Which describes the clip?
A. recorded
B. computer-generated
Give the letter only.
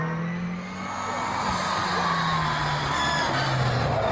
A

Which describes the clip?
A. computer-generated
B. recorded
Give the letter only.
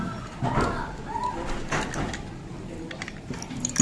B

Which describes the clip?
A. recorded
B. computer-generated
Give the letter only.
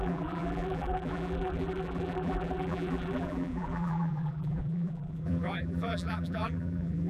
B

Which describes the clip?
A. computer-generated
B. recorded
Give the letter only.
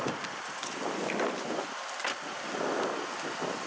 B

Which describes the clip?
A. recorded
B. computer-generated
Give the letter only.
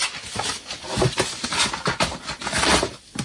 A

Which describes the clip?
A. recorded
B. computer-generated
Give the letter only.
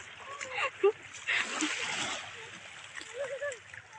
A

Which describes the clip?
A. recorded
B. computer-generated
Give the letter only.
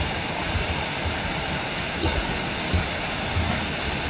A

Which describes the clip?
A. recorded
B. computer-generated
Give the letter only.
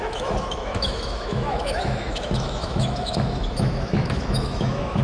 B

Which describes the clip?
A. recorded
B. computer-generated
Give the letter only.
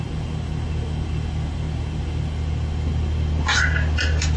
A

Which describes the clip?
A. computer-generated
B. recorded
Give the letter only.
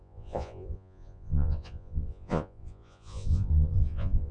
A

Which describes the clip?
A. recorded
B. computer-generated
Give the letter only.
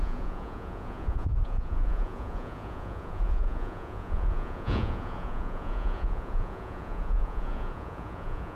B